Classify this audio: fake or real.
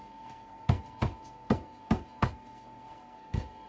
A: fake